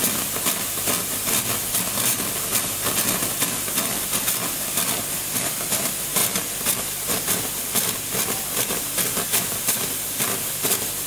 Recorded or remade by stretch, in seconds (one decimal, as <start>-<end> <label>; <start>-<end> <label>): 0.0-6.2 remade; 6.2-8.8 recorded; 8.8-11.1 remade